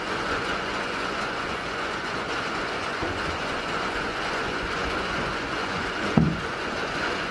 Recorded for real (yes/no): no